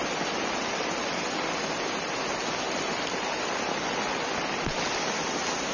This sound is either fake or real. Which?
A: real